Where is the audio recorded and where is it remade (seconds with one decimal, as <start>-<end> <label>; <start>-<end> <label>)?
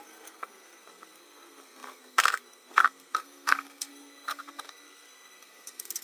0.0-6.0 remade